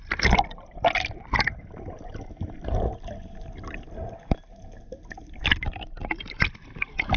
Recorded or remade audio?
recorded